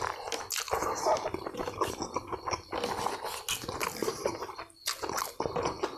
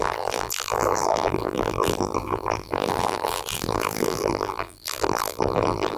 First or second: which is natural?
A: first